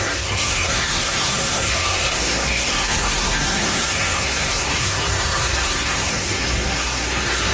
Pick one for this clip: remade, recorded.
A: remade